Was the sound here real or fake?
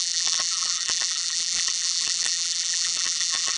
fake